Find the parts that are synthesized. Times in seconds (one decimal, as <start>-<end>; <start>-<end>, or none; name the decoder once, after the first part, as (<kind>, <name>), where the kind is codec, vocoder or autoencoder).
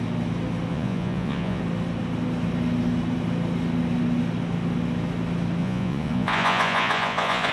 0.7-1.6 (vocoder, Vocos); 5.6-7.5